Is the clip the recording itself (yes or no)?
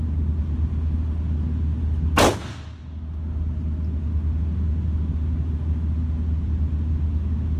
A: yes